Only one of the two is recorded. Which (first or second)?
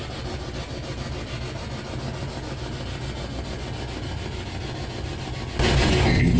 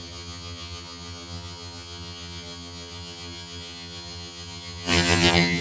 first